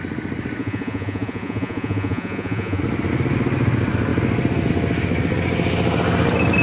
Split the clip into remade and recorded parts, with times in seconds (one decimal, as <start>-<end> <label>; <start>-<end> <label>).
0.0-0.6 recorded; 0.6-2.8 remade; 2.8-6.6 recorded